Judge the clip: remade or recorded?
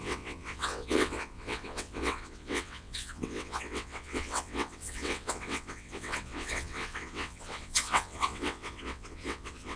remade